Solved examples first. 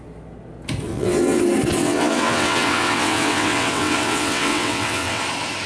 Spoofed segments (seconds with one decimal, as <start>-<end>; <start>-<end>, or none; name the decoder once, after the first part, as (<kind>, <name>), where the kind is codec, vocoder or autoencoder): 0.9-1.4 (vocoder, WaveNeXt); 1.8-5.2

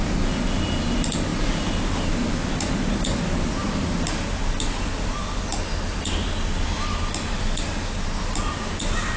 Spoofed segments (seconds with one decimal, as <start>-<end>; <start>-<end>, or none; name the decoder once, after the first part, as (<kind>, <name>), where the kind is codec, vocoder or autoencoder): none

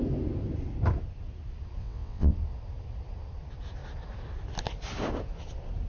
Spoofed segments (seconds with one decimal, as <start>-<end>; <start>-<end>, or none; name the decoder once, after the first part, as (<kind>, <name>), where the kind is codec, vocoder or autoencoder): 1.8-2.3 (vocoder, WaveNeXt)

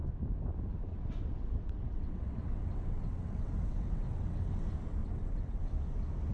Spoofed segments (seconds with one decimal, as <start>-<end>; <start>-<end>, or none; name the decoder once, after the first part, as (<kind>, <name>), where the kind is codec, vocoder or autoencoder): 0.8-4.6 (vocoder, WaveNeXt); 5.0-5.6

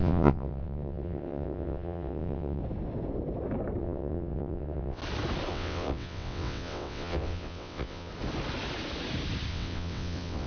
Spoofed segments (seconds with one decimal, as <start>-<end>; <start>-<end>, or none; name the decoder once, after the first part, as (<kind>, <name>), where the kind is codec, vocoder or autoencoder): 0.0-2.6 (vocoder, WaveNeXt); 3.8-5.0; 5.5-8.1; 9.5-10.5

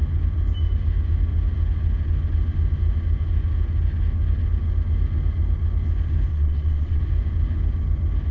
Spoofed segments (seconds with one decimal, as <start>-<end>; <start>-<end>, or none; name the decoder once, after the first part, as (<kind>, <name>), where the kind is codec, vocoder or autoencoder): 6.3-7.0 (vocoder, WaveNeXt)

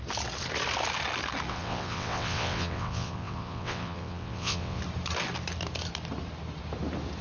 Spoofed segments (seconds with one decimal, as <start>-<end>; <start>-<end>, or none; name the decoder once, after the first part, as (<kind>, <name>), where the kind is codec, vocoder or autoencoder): 1.5-4.8 (vocoder, WaveNeXt)

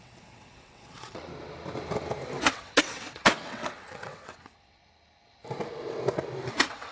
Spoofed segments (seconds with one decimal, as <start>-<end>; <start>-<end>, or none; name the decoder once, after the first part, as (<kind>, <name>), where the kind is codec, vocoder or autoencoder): 0.0-1.3 (vocoder, WaveNeXt); 2.4-4.8; 6.5-6.9